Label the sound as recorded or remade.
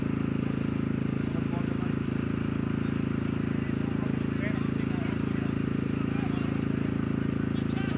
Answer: recorded